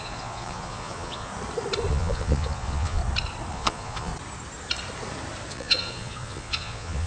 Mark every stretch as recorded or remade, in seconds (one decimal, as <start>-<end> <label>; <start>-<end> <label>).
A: 0.0-1.3 remade; 1.3-1.9 recorded; 1.9-3.0 remade; 3.0-3.5 recorded; 3.5-4.1 remade; 4.1-5.5 recorded; 5.5-7.1 remade